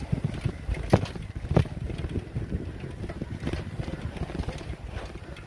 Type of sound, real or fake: real